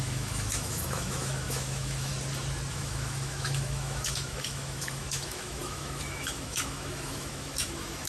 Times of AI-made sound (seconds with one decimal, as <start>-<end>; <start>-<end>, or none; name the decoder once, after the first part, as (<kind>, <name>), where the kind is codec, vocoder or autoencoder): 0.0-2.1 (autoencoder, DAC-VAE); 2.7-8.1